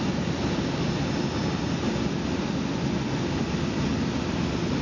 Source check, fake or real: real